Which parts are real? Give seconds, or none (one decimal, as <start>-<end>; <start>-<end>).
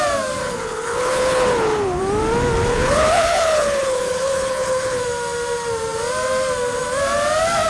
0.0-0.4; 2.0-2.7; 5.0-7.7